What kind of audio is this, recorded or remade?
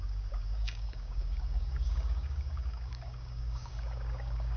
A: remade